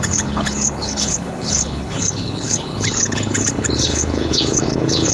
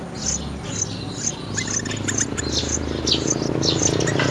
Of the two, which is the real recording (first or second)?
second